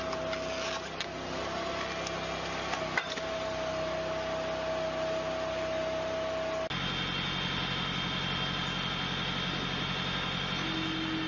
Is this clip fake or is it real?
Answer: real